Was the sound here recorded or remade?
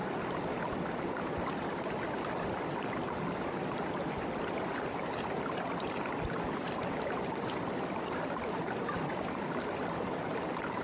recorded